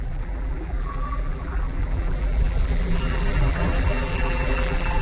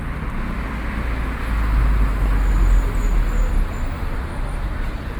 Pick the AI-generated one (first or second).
first